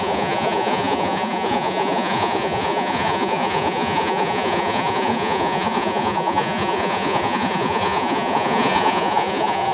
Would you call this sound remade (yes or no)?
yes